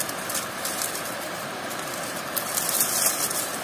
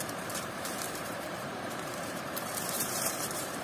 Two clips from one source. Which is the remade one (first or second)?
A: second